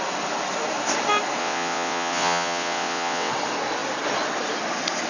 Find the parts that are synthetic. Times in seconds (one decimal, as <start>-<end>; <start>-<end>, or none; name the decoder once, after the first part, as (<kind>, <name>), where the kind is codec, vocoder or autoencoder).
1.4-3.3 (vocoder, WaveNeXt)